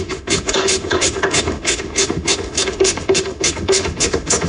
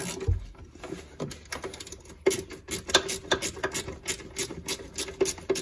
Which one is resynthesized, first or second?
first